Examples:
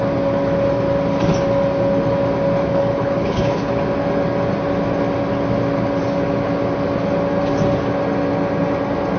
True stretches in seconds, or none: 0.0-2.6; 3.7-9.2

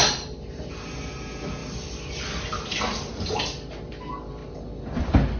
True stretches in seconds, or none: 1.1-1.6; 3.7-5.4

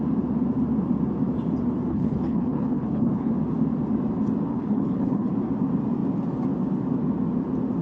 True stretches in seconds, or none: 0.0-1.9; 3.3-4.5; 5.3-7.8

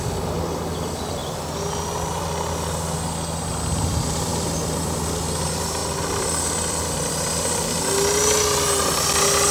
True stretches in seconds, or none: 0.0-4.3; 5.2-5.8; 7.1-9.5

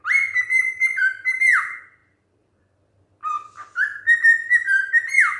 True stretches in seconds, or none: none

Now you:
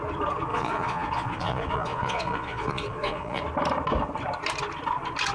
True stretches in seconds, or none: 0.0-0.5; 3.4-5.3

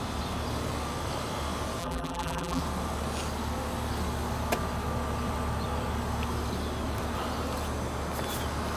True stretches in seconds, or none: 0.0-1.8; 2.6-8.8